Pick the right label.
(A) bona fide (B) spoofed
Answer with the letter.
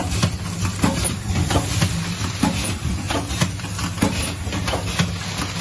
A